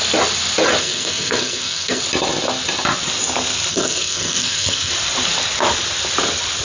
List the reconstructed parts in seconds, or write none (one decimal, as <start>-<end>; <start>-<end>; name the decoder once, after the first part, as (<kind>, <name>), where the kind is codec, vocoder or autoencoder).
0.8-2.0 (codec, SNAC); 3.7-4.9